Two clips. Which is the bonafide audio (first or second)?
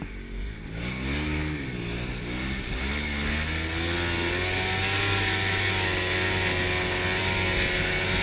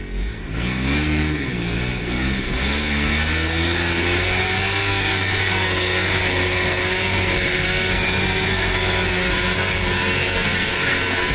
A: first